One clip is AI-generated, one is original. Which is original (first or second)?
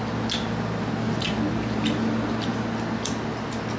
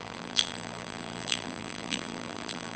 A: first